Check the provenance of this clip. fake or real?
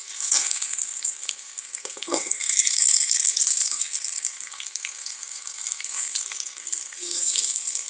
fake